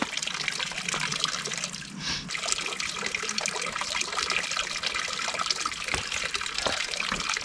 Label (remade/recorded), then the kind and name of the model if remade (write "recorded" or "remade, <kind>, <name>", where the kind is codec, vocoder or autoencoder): recorded